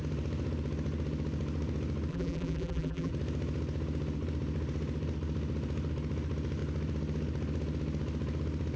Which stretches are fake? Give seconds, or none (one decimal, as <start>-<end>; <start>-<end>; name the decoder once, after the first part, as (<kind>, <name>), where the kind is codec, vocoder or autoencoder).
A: 2.1-3.1 (vocoder, BigVGAN v2)